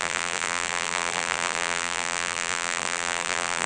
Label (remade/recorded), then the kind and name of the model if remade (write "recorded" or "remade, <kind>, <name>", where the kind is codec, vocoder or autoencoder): remade, vocoder, BigVGAN v2